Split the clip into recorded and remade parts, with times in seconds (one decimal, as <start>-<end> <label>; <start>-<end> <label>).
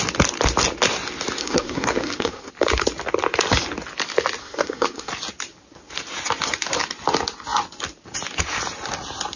0.0-1.4 recorded; 1.4-2.5 remade; 2.5-4.4 recorded; 4.4-5.1 remade; 5.1-9.4 recorded